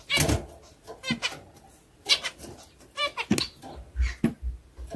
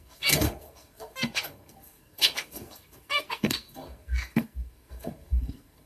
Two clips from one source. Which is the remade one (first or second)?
second